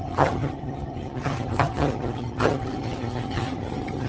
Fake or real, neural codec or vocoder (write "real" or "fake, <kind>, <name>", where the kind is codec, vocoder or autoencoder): fake, vocoder, HiFi-GAN